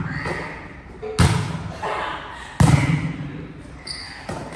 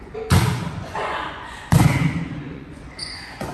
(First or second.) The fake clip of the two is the second